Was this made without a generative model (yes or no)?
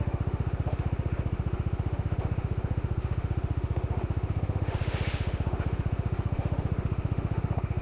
no